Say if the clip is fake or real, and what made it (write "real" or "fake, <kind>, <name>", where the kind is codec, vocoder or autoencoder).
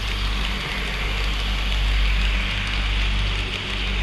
real